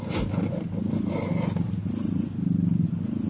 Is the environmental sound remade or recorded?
recorded